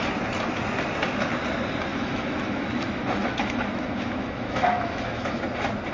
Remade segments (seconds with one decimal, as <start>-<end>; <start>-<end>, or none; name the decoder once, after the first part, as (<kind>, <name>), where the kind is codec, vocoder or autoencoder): 1.9-5.4 (autoencoder, DAC-VAE)